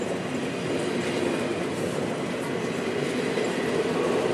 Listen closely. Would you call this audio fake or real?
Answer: real